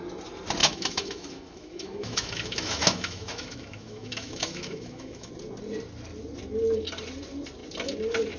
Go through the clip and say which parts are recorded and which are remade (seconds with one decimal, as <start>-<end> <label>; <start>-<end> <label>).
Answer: 0.0-0.6 recorded; 0.6-5.3 remade; 5.3-8.4 recorded